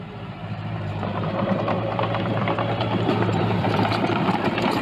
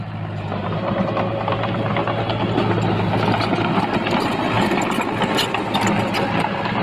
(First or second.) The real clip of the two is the second